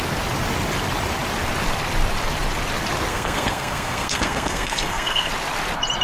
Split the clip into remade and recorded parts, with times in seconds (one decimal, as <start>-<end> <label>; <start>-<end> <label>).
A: 0.0-3.1 recorded; 3.1-5.3 remade; 5.3-6.0 recorded